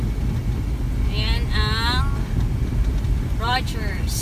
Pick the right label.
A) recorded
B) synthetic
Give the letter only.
A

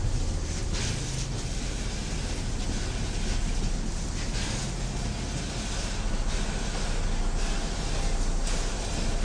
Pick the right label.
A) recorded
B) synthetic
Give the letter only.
A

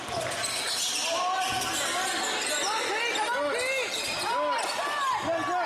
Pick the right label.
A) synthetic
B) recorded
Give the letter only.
B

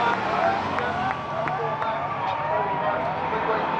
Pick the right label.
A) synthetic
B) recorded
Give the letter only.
B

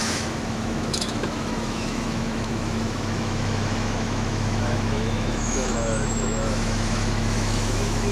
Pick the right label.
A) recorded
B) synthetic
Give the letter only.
B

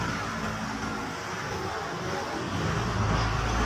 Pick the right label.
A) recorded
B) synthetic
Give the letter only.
A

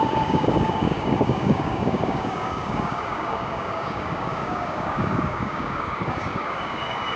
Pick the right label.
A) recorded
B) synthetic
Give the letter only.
B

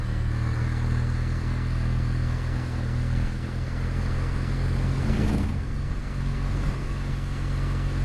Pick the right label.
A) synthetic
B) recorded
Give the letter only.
A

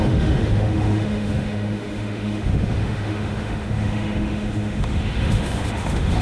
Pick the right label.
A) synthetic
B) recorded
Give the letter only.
A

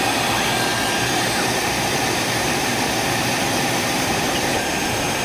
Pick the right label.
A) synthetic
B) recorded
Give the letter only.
A